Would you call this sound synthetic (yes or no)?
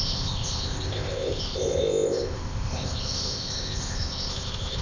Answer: yes